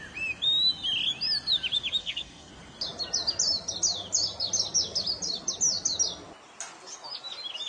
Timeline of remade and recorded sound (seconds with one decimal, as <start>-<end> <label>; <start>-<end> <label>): 0.0-2.0 recorded; 2.0-2.5 remade; 2.5-7.7 recorded